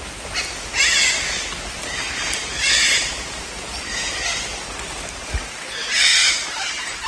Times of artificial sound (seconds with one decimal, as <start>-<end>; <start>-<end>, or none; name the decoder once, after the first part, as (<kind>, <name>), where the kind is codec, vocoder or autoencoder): none